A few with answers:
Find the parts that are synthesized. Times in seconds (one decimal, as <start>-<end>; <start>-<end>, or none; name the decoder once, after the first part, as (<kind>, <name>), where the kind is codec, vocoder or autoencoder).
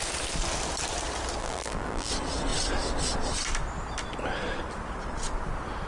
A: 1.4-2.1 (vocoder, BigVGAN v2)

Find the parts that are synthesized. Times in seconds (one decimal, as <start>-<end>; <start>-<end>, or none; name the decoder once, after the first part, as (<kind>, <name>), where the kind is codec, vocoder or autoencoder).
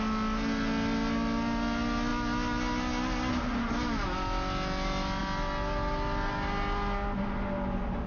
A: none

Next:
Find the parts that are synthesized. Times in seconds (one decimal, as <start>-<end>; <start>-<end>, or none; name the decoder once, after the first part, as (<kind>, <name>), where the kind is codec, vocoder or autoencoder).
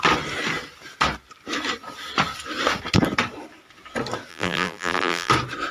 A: 4.3-5.3 (vocoder, BigVGAN v2)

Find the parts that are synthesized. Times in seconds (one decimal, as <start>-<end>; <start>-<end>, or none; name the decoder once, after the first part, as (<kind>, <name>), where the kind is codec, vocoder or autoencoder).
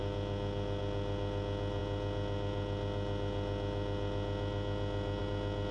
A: none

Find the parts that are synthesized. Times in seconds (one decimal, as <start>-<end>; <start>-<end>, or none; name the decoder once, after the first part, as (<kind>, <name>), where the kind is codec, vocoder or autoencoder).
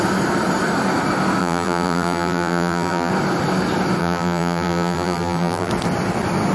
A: 1.4-3.1 (vocoder, BigVGAN v2); 4.0-5.7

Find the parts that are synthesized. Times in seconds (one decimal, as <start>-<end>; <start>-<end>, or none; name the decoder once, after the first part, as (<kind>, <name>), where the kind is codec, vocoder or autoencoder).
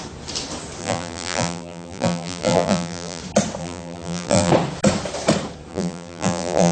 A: 0.8-3.2 (vocoder, BigVGAN v2); 3.6-4.5; 5.7-6.7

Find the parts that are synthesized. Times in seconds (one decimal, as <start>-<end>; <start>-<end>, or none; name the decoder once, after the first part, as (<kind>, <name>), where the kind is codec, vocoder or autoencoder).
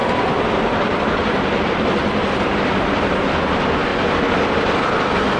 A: 0.0-3.2 (vocoder, BigVGAN v2)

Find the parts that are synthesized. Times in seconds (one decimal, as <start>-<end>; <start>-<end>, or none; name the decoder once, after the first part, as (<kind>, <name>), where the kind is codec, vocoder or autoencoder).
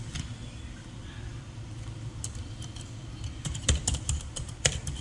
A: 0.0-1.3 (vocoder, BigVGAN v2); 4.3-5.0